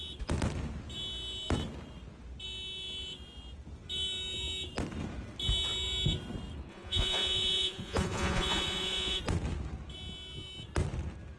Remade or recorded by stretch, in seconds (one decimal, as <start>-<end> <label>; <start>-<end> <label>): 0.0-6.7 recorded; 6.7-9.2 remade; 9.2-11.4 recorded